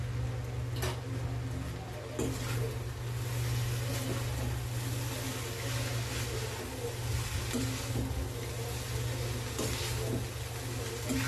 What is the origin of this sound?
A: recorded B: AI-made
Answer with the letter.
A